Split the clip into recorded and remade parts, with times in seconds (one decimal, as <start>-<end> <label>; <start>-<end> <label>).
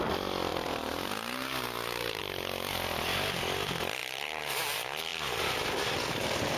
0.0-0.5 recorded; 0.5-2.2 remade; 2.2-4.0 recorded; 4.0-4.6 remade; 4.6-6.6 recorded